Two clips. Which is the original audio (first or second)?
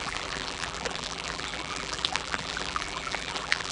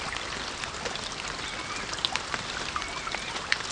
second